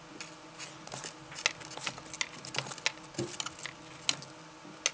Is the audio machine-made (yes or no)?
no